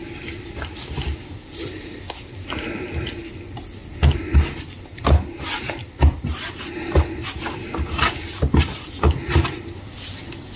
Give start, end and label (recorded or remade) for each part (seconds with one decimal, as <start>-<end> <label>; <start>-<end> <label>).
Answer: 0.0-10.6 recorded